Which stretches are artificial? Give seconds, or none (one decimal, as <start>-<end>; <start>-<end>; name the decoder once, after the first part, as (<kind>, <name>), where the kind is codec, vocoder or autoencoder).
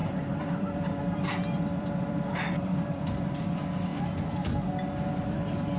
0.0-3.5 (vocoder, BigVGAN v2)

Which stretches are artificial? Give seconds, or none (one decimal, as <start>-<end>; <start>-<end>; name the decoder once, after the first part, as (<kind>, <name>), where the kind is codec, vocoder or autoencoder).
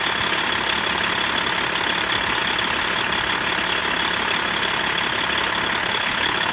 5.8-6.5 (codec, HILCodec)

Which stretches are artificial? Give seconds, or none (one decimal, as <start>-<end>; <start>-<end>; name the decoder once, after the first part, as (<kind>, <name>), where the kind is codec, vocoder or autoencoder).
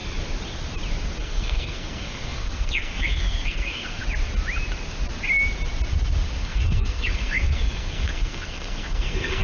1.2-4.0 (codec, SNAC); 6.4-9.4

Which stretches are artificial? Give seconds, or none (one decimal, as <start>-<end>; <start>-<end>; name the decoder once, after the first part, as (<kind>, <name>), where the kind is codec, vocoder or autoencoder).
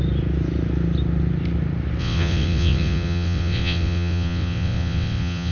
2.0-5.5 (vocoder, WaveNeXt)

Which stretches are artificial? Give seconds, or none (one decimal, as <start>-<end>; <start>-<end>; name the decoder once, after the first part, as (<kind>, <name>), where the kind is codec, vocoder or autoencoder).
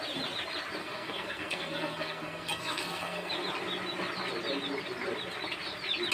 0.8-3.3 (codec, SNAC)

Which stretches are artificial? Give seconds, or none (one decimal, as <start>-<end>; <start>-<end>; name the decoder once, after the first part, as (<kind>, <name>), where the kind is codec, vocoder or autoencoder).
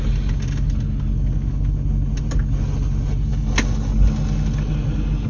none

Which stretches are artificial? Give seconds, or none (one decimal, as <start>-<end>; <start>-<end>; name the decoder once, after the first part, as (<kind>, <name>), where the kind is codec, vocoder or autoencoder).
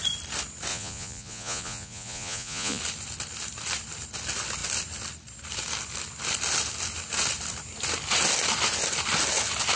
0.7-2.8 (vocoder, Vocos)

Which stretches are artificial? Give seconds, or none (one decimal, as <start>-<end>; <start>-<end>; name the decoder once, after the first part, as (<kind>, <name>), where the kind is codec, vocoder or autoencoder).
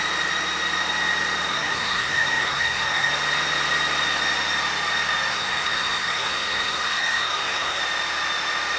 1.5-3.1 (codec, SNAC); 5.3-7.8